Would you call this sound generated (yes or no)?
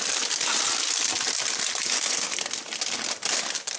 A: no